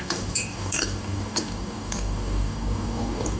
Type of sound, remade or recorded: remade